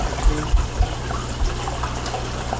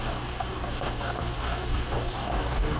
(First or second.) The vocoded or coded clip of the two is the second